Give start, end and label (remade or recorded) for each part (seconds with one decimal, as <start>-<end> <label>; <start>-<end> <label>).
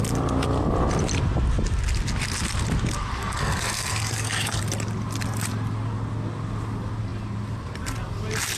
0.0-3.2 recorded; 3.2-4.6 remade; 4.6-8.6 recorded